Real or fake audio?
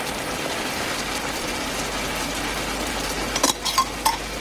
real